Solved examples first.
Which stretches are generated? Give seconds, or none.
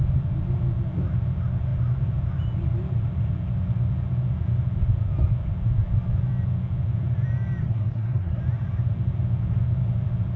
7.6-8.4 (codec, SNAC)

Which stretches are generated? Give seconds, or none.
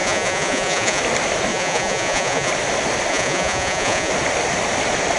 0.0-1.0 (vocoder, Vocos); 1.5-2.5; 3.1-4.1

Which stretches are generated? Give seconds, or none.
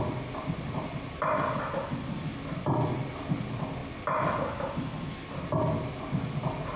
none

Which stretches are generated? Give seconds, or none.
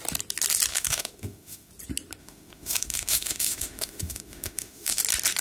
0.7-1.7 (autoencoder, DAC-VAE); 2.2-5.0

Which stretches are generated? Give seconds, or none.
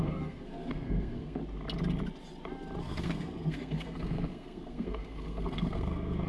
0.0-1.4 (codec, SNAC); 2.8-6.3